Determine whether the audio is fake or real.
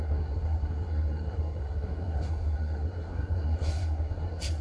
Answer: fake